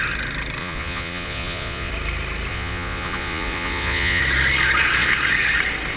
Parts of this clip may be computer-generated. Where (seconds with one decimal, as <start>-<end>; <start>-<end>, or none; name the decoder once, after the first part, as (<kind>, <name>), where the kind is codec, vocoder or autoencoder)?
0.6-1.9 (vocoder, Vocos); 2.5-4.2